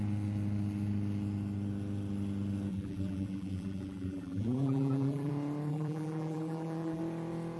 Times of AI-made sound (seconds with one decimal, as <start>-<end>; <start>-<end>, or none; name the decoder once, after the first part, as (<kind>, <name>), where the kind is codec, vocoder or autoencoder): 2.7-5.3 (vocoder, BigVGAN v2); 5.7-7.0